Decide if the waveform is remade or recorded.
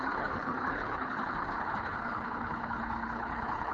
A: remade